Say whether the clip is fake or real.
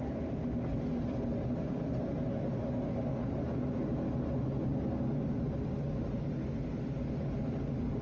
real